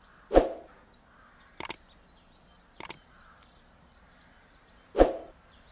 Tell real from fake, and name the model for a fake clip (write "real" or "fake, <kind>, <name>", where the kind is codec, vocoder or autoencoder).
real